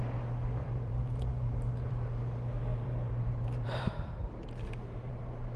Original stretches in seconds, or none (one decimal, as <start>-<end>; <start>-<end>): 0.0-0.6; 2.2-2.7; 5.1-5.6